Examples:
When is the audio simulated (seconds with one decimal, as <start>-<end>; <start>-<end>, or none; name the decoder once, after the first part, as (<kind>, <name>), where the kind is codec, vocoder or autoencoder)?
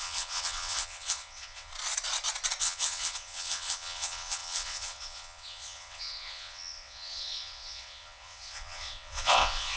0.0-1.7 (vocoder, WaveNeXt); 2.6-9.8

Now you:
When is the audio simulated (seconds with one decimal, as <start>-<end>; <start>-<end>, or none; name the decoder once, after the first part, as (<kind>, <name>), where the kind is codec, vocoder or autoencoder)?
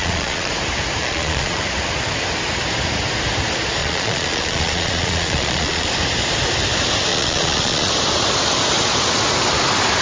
0.0-0.5 (vocoder, Vocos); 1.0-1.6; 3.8-5.9; 7.1-7.9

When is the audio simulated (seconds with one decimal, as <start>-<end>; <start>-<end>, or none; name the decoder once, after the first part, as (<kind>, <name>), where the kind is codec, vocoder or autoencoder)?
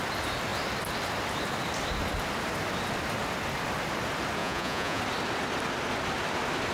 4.4-5.0 (vocoder, Vocos)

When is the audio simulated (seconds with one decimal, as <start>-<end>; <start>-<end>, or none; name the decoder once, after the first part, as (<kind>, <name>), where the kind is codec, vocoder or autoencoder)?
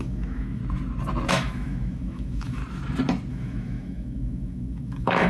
0.0-0.6 (autoencoder, DAC-VAE); 1.3-2.6; 3.3-5.3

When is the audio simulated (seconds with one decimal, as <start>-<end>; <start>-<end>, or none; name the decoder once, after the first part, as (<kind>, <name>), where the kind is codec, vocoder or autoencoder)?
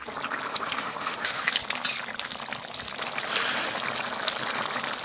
0.5-1.4 (autoencoder, DAC-VAE)